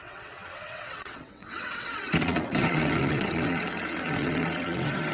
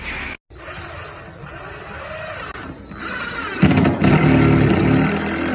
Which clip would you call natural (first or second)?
second